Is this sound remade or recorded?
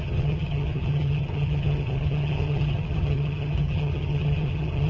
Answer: remade